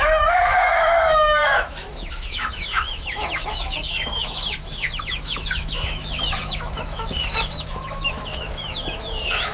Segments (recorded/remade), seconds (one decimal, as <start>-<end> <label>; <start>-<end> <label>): 0.0-9.5 remade